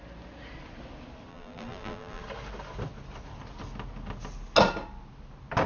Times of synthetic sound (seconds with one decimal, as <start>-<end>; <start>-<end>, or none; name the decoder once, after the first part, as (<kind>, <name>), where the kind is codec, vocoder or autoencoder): 1.3-2.2 (vocoder, BigVGAN v2)